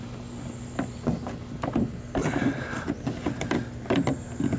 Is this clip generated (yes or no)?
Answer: no